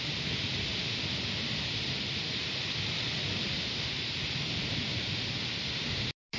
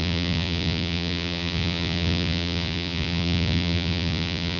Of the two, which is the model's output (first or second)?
second